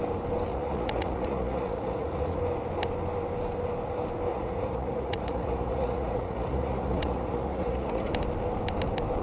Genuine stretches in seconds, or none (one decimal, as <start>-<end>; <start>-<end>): 0.0-0.5; 2.4-4.3; 8.1-9.2